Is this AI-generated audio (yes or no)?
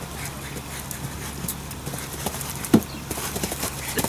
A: no